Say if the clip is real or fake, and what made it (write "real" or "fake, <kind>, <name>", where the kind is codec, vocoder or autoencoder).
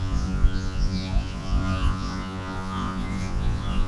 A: fake, vocoder, Vocos